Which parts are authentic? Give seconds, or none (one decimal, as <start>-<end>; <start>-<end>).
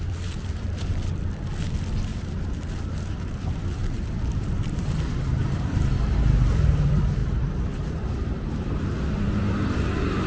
0.0-2.1; 5.7-7.2; 8.7-10.3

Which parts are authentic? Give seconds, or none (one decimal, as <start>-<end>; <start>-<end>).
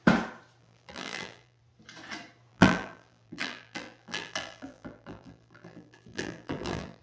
0.0-0.6; 1.6-2.5